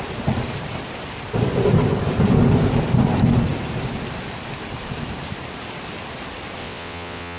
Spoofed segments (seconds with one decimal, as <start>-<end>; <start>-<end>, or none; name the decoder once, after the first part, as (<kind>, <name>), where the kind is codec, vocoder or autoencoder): 6.6-7.4 (vocoder, WaveNeXt)